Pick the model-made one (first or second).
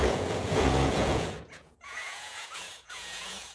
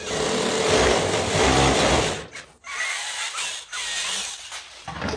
first